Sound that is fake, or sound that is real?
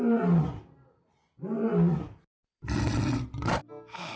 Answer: real